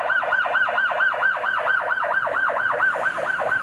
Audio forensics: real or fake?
real